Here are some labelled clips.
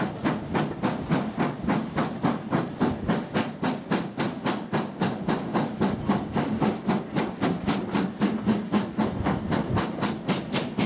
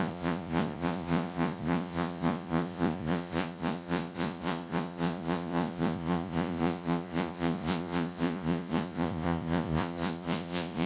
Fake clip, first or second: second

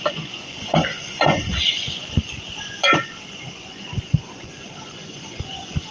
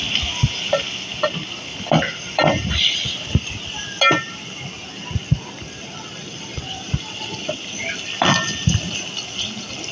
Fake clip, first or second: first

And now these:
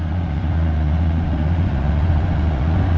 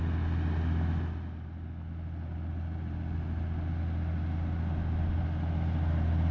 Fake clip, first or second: first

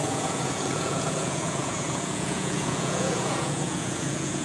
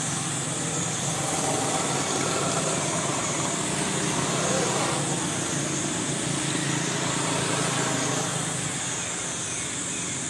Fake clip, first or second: first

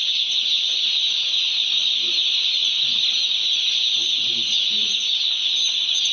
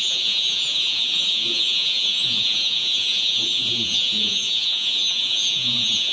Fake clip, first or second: second